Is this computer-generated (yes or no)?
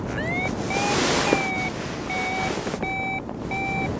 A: no